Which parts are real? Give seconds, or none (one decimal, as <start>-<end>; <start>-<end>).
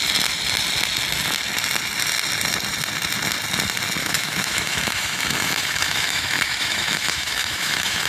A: 0.0-4.0